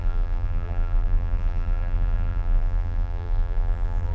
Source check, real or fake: fake